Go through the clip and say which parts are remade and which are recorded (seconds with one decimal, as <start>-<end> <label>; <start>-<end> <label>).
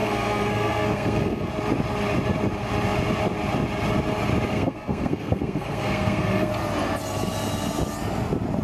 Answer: 0.0-1.5 remade; 1.5-4.5 recorded; 4.5-6.5 remade; 6.5-8.6 recorded